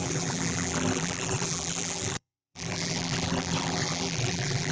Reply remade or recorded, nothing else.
remade